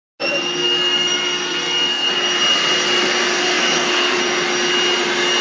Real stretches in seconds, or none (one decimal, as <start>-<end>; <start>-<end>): 0.0-0.6; 2.1-3.5; 4.2-5.4